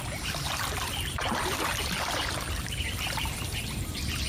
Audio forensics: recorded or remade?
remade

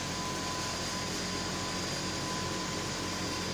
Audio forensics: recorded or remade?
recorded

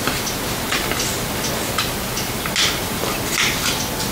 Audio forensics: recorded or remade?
recorded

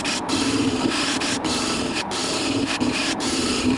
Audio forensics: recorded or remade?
remade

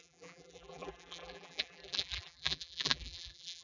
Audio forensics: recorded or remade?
remade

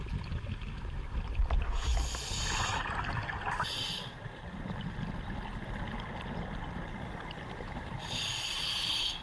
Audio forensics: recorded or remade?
recorded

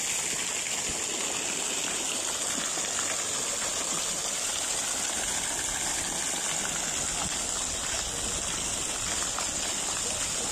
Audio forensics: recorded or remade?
recorded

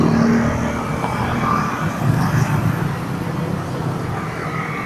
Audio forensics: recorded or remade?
recorded